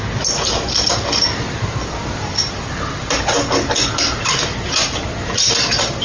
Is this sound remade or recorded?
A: recorded